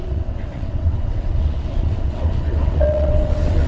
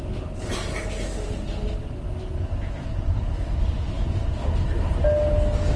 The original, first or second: second